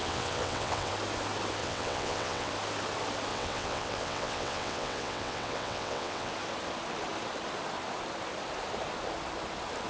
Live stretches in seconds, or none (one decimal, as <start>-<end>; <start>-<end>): 0.9-1.6; 2.5-3.3; 6.3-9.9